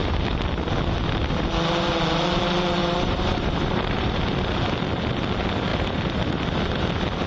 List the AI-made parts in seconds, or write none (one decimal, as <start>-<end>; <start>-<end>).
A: 2.8-4.1; 5.7-6.4